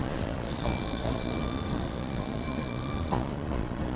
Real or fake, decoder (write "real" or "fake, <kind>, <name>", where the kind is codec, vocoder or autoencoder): fake, vocoder, Vocos